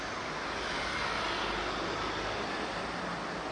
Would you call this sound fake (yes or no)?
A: no